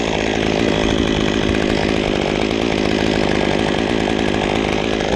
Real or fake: real